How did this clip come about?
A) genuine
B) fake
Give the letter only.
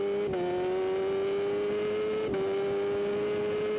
A